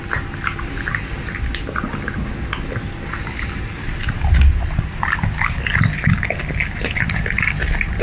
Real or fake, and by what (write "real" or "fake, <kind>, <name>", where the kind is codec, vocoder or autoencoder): real